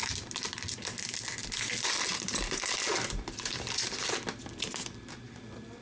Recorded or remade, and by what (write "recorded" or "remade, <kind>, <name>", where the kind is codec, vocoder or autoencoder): recorded